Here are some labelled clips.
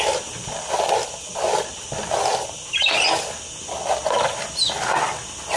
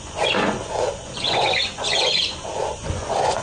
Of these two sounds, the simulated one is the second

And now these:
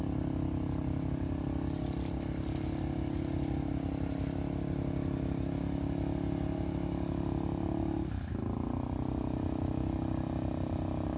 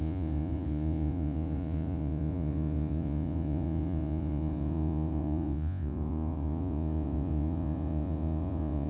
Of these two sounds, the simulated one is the second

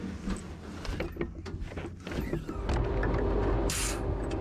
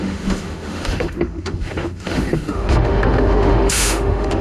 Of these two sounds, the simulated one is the second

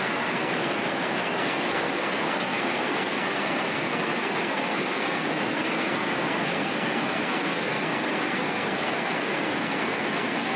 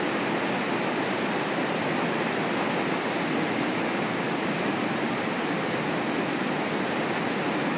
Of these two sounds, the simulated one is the first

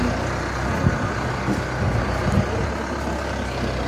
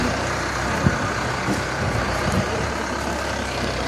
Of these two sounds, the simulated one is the second